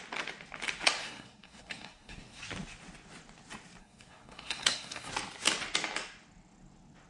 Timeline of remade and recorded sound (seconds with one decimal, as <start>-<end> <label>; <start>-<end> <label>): 0.0-1.0 recorded; 1.0-2.4 remade; 2.4-3.8 recorded; 3.8-5.1 remade; 5.1-7.1 recorded